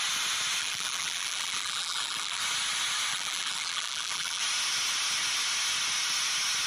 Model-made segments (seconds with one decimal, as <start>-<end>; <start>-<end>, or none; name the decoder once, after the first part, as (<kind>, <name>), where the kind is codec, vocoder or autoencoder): 0.6-2.4 (vocoder, BigVGAN v2); 3.1-4.4